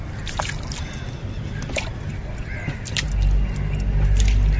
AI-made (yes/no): no